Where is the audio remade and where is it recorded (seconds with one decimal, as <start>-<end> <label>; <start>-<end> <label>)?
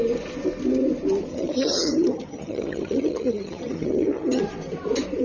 0.0-1.3 recorded; 1.3-4.4 remade; 4.4-5.2 recorded